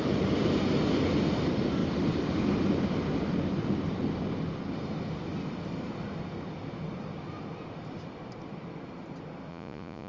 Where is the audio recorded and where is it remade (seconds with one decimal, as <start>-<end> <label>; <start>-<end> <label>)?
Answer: 0.0-9.5 recorded; 9.5-10.1 remade